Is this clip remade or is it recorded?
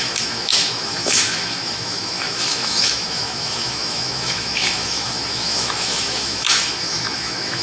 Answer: remade